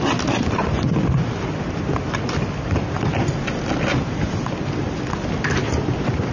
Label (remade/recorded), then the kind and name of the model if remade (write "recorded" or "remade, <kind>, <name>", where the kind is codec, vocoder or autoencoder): recorded